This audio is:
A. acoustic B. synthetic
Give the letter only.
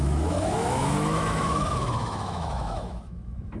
B